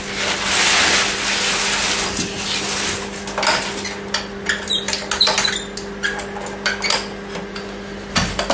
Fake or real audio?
real